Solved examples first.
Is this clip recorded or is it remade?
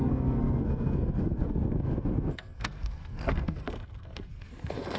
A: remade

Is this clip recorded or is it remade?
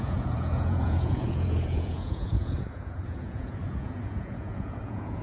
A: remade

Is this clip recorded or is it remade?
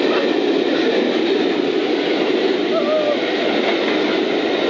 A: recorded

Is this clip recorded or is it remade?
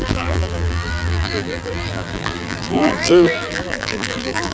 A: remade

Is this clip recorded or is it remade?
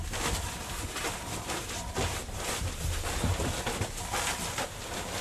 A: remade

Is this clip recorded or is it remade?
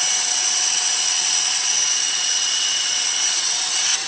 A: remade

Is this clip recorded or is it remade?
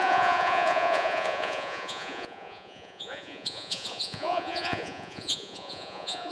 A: remade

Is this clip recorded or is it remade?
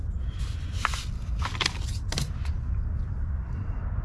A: recorded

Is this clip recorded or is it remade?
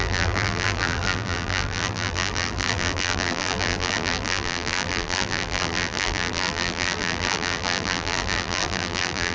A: remade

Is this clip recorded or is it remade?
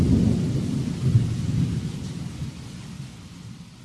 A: recorded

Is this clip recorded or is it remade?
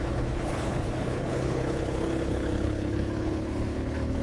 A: remade